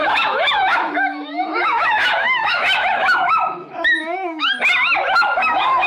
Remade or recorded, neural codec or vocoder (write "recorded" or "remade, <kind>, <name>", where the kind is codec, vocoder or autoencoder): remade, autoencoder, DAC-VAE